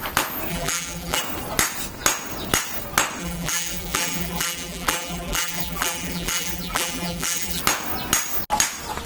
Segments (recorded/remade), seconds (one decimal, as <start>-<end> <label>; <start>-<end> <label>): 0.0-0.5 recorded; 0.5-1.2 remade; 1.2-3.2 recorded; 3.2-7.6 remade; 7.6-9.1 recorded